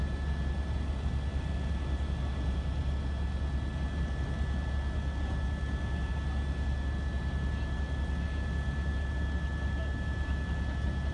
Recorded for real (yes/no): yes